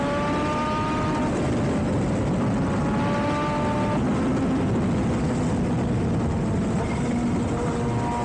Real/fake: real